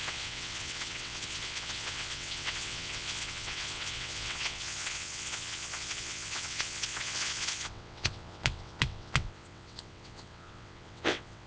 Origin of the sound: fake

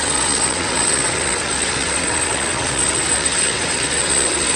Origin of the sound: fake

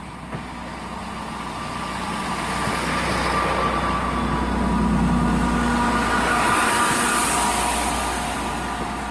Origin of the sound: real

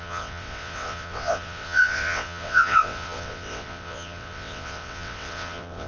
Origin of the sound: fake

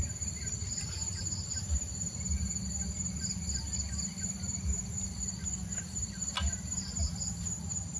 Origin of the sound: real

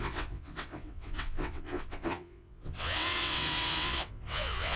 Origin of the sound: fake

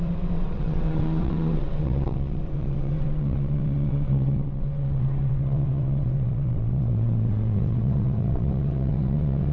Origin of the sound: fake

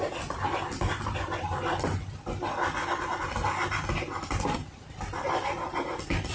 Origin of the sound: real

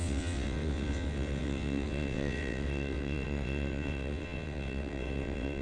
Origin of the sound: fake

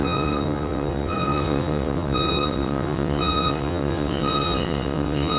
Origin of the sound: fake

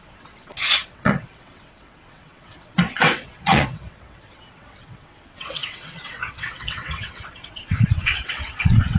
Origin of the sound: fake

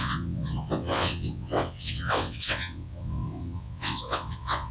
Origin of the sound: fake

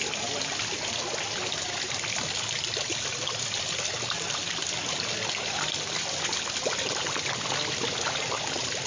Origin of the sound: real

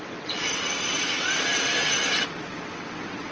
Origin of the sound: fake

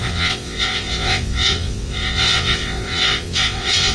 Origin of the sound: fake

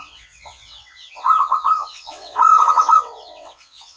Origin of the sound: fake